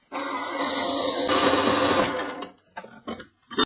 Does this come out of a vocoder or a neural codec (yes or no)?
no